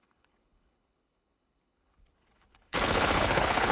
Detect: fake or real fake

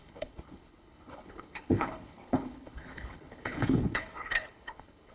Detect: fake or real fake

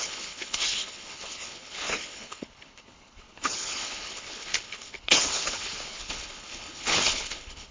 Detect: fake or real fake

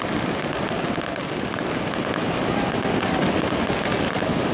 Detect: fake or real real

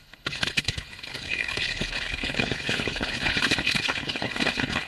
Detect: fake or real fake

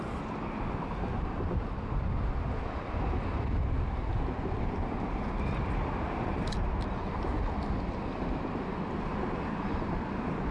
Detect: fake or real real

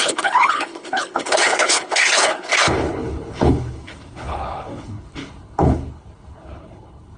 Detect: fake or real fake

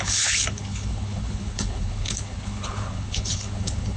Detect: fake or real fake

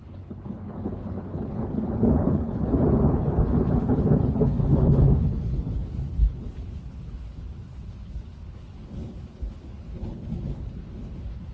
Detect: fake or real fake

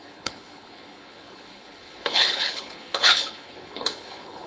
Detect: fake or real fake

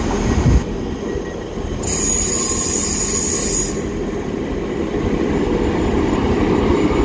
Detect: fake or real real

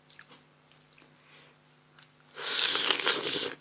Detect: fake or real real